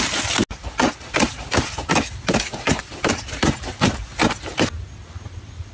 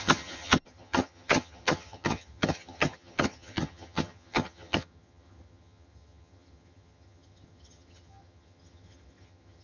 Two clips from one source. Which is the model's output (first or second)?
second